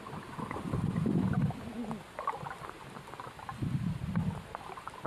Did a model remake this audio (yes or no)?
no